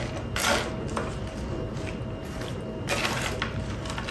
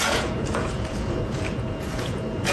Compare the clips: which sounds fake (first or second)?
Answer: second